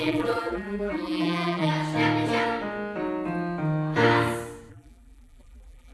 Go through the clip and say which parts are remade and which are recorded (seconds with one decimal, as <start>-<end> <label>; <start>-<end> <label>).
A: 0.0-1.7 remade; 1.7-4.7 recorded; 4.7-5.9 remade